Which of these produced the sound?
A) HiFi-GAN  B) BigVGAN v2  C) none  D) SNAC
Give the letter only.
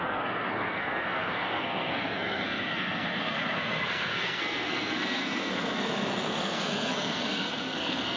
D